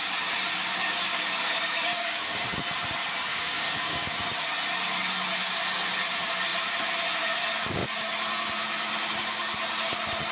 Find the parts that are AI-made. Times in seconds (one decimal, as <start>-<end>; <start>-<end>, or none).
1.1-2.3; 3.3-4.1